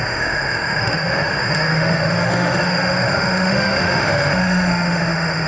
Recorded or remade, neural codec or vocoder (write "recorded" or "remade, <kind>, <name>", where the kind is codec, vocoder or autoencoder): remade, autoencoder, DAC-VAE